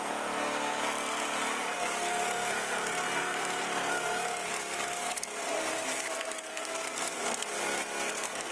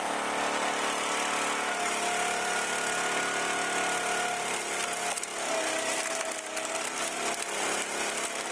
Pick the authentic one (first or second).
second